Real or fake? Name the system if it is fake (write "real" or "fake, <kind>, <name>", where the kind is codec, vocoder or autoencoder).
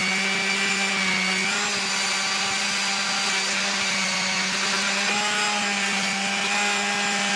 real